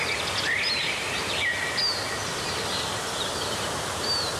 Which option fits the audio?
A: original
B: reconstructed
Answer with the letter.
A